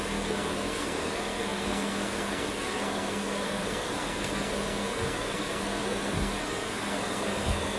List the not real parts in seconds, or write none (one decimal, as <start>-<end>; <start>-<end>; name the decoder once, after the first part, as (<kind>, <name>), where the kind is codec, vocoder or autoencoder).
0.0-7.8 (codec, SNAC)